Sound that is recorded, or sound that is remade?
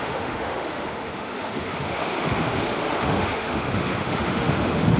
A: remade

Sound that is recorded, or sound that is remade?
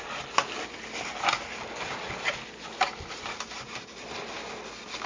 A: recorded